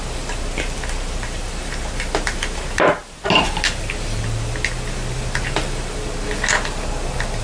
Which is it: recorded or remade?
recorded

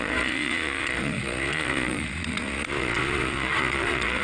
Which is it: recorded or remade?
remade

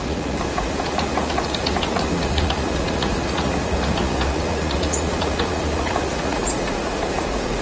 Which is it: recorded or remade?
remade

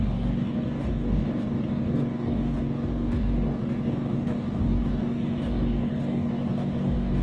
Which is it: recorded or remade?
remade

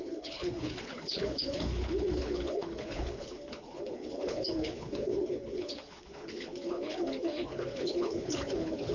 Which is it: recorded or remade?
remade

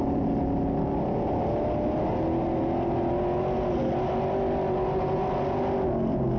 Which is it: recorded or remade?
recorded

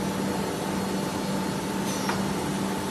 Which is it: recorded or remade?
recorded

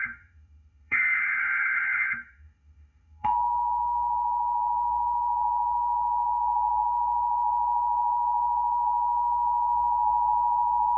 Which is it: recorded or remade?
remade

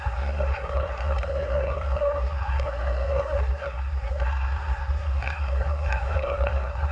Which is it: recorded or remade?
remade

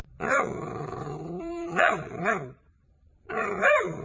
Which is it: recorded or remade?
remade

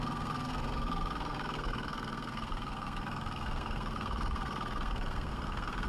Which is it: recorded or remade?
remade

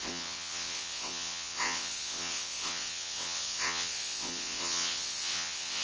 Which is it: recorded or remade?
remade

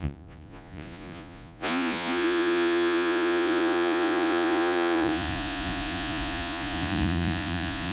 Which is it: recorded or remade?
remade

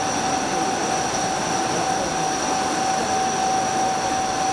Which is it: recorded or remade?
recorded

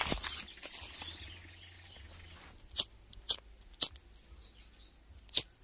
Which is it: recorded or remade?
recorded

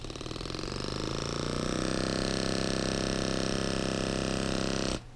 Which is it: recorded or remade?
recorded